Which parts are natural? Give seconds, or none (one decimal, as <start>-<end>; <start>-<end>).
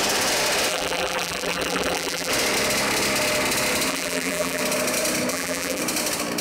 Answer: 0.0-0.7; 2.3-3.9; 4.6-5.3; 5.8-6.4